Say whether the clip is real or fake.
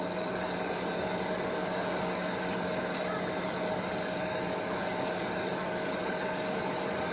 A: fake